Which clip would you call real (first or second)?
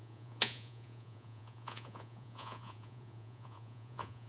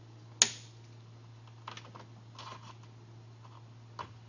second